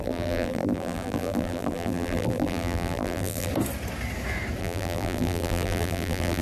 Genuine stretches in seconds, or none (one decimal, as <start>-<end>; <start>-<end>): 3.5-4.6